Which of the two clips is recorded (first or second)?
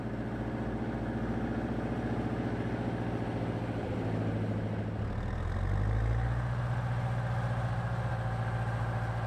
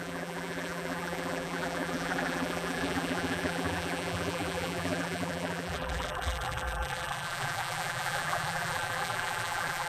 first